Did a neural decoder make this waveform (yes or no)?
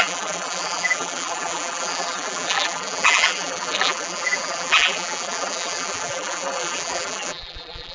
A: yes